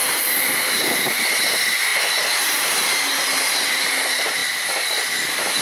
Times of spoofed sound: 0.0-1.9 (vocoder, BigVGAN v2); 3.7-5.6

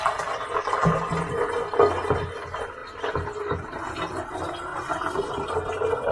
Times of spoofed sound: none

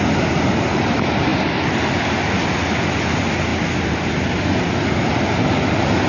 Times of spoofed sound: 3.5-5.5 (vocoder, BigVGAN v2)

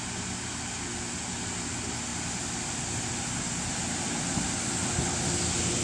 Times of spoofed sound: 2.1-3.7 (vocoder, BigVGAN v2)

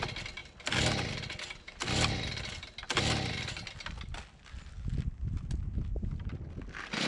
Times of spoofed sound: none